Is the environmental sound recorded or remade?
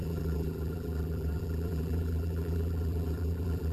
remade